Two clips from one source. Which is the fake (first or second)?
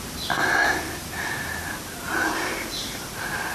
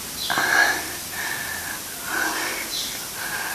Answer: first